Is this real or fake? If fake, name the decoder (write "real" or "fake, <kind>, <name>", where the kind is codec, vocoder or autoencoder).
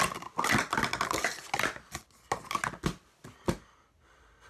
real